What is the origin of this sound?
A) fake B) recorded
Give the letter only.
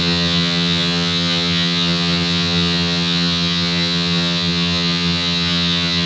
A